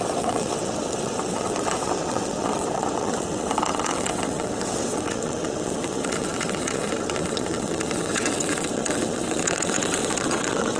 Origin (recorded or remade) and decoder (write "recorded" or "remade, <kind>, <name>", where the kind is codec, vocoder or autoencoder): remade, vocoder, WaveNeXt